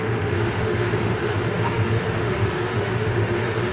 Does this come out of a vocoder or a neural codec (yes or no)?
yes